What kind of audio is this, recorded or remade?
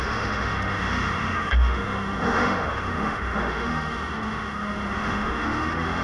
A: remade